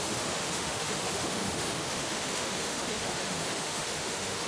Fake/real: fake